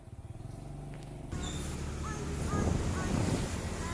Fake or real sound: real